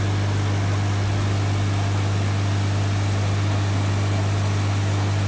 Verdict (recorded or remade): recorded